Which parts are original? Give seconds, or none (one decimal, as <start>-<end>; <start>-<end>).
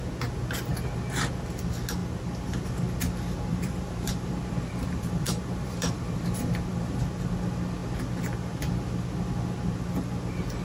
0.0-3.5; 7.0-10.6